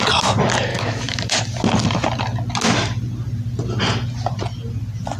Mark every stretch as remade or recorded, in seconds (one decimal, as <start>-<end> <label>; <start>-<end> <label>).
0.0-0.7 recorded; 0.7-1.4 remade; 1.4-5.2 recorded